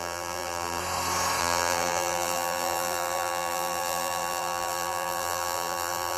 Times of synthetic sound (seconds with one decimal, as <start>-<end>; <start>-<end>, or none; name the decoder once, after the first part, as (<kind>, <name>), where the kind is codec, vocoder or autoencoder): 0.0-0.8 (vocoder, BigVGAN v2); 1.4-6.2